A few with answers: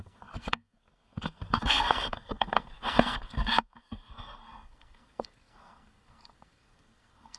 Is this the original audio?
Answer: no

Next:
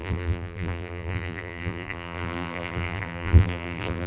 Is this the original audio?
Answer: no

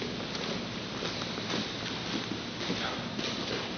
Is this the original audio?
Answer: yes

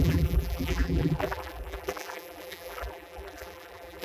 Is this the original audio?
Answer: no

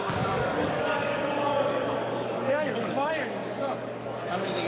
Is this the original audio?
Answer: no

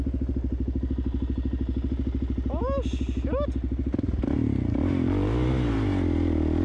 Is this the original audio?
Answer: yes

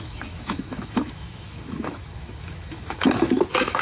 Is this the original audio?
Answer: no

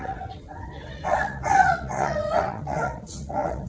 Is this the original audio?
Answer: no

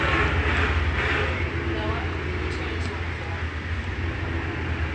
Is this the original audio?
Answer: yes